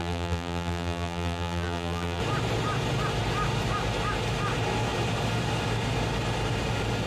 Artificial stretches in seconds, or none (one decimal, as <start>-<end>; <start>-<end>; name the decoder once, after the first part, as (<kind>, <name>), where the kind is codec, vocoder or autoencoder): 0.0-2.2 (vocoder, BigVGAN v2)